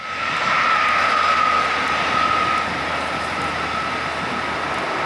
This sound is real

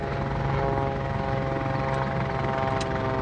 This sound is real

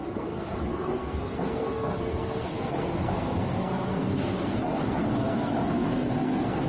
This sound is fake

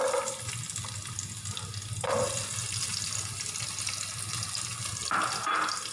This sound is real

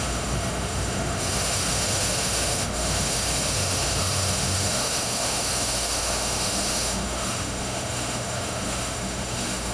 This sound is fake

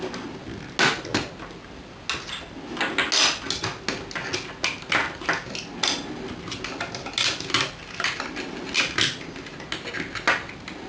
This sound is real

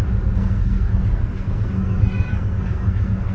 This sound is fake